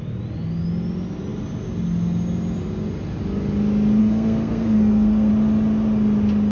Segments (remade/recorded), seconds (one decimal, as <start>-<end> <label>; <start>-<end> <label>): 0.0-4.0 recorded; 4.0-5.3 remade; 5.3-6.5 recorded